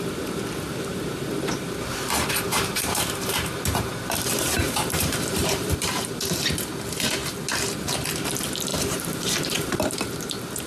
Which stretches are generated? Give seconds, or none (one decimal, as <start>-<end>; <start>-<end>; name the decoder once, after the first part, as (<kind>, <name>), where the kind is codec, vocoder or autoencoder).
2.5-6.1 (vocoder, BigVGAN v2); 8.7-9.7